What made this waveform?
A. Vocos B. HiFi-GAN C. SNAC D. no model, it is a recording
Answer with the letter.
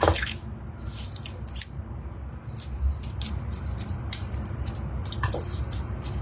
D